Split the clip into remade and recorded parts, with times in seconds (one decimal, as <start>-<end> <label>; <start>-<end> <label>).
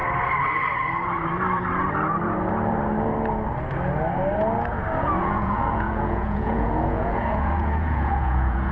0.0-5.2 recorded; 5.2-8.7 remade